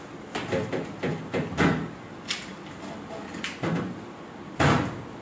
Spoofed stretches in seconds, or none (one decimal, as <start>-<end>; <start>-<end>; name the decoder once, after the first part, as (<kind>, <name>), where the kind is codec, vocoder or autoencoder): none